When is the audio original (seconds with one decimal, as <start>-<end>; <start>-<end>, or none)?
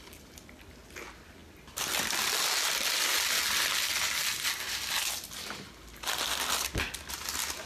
0.0-7.7